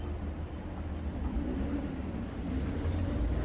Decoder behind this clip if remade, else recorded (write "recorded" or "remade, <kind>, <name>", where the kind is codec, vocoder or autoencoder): recorded